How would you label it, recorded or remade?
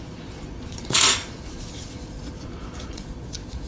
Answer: remade